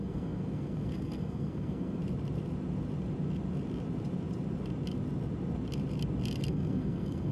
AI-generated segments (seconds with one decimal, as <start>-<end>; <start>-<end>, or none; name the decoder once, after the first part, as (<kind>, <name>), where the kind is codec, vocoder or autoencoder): 0.0-2.0 (codec, SNAC); 6.4-7.3